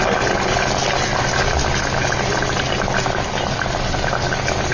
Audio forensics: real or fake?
real